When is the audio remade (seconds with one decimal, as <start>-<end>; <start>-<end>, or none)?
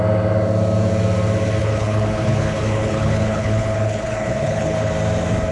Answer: 1.6-4.9